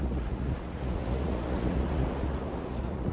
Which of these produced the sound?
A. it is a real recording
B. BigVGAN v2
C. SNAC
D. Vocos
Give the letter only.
D